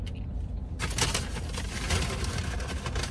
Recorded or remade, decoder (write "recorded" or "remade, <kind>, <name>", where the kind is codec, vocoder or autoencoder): recorded